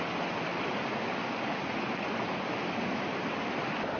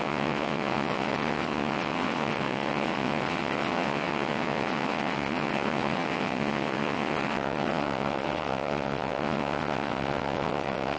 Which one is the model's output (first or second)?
second